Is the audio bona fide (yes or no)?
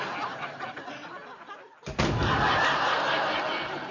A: yes